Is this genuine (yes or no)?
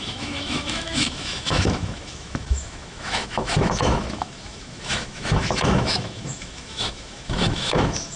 no